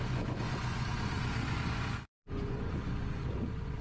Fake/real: fake